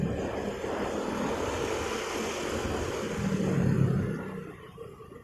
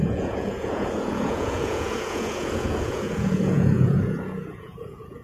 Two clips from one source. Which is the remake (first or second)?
second